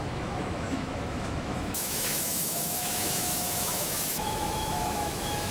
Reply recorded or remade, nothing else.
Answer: remade